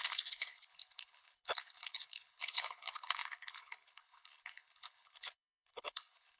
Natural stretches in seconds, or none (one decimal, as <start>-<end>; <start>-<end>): none